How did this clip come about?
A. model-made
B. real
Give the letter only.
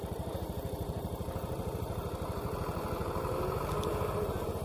B